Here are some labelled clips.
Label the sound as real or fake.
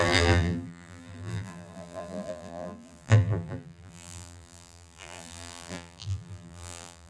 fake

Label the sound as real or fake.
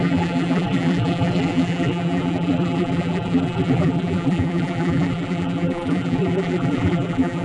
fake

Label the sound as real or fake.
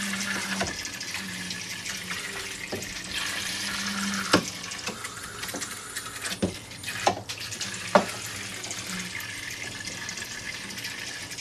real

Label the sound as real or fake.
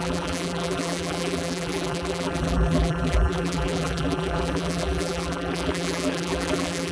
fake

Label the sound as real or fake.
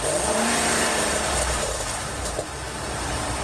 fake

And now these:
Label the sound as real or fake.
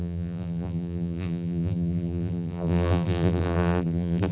fake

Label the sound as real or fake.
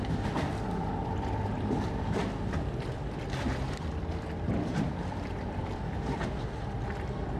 fake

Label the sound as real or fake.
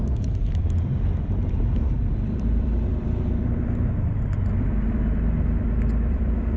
fake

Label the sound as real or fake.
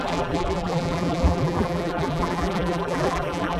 fake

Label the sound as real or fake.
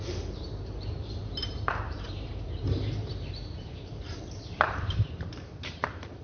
fake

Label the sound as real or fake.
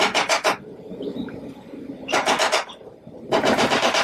fake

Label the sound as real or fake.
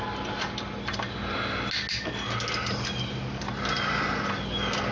real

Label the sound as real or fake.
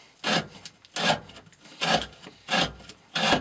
real